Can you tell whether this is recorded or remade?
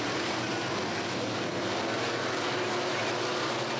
recorded